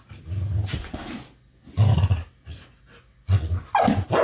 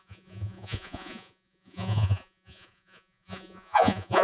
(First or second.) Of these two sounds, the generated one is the second